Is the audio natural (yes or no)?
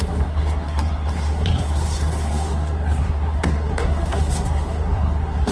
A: no